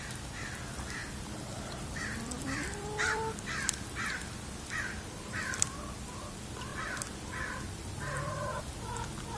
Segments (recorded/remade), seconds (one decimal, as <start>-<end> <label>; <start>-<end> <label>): 0.0-1.0 recorded; 1.0-5.9 remade; 5.9-6.7 recorded; 6.7-8.6 remade; 8.6-9.4 recorded